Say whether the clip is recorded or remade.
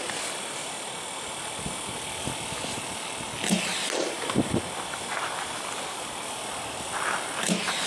recorded